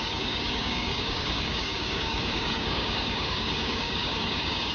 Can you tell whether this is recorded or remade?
remade